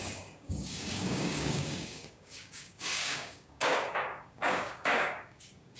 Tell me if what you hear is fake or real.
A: fake